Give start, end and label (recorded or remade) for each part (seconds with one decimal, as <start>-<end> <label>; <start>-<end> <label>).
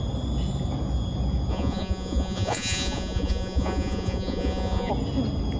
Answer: 0.0-1.5 recorded; 1.5-4.9 remade; 4.9-5.6 recorded